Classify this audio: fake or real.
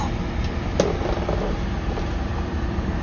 real